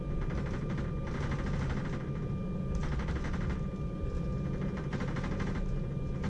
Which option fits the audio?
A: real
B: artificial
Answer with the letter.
A